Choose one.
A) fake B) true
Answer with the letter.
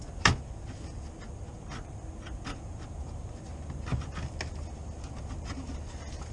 B